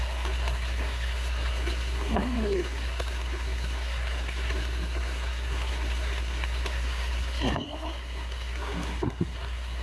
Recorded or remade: remade